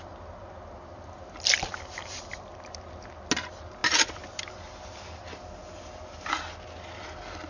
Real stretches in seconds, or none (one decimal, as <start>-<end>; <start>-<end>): 0.0-7.5